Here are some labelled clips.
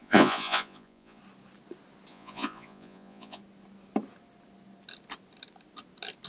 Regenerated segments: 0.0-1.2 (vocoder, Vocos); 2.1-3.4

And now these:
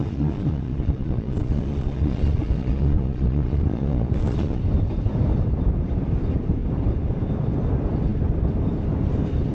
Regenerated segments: 0.0-4.6 (vocoder, Vocos)